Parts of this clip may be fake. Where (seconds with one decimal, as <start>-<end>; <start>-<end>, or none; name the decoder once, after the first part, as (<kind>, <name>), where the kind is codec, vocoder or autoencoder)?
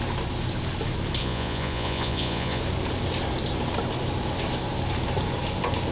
1.2-2.6 (vocoder, Vocos)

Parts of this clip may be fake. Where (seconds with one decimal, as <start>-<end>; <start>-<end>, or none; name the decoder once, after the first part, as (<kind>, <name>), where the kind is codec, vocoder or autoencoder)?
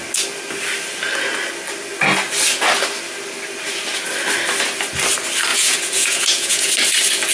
5.5-6.7 (vocoder, Vocos)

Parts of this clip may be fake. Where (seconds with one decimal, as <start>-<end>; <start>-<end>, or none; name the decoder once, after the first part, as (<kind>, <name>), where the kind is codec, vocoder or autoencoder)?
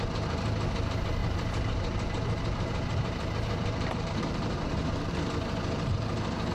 1.2-5.1 (vocoder, BigVGAN v2)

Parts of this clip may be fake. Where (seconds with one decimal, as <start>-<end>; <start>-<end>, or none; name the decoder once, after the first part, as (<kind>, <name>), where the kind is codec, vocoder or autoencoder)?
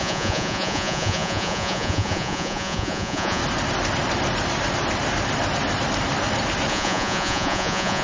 0.0-3.4 (vocoder, Vocos); 6.7-8.0